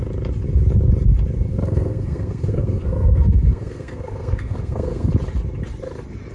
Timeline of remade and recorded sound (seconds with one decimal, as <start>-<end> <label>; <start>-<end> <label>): 0.0-1.5 recorded; 1.5-5.1 remade; 5.1-6.3 recorded